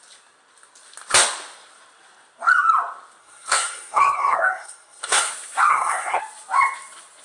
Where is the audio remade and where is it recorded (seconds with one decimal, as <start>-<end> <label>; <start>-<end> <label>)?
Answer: 0.0-3.2 recorded; 3.2-5.3 remade; 5.3-5.7 recorded; 5.7-6.2 remade; 6.2-7.2 recorded